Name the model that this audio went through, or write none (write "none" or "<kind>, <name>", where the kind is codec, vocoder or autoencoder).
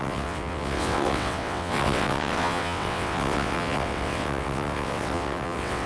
vocoder, WaveNeXt